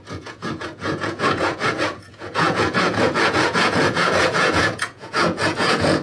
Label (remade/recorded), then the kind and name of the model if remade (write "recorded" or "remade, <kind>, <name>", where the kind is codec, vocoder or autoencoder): remade, vocoder, Vocos